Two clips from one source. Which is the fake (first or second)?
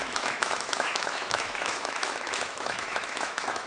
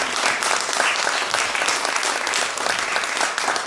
first